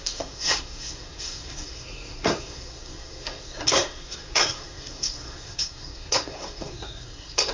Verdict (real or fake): fake